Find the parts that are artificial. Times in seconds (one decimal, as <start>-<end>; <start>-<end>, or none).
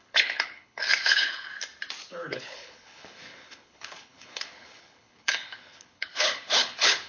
0.0-1.5; 2.1-7.1